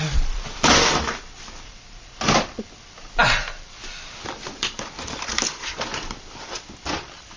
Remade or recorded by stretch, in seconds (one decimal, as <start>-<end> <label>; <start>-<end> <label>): 0.0-3.8 remade; 3.8-4.5 recorded; 4.5-7.4 remade